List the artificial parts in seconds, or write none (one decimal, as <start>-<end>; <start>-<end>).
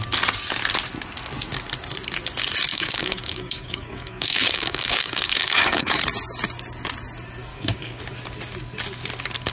2.7-6.0; 7.5-8.0